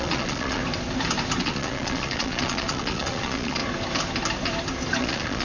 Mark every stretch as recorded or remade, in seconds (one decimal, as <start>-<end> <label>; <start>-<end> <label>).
0.0-0.6 remade; 0.6-1.4 recorded; 1.4-3.6 remade; 3.6-5.0 recorded; 5.0-5.4 remade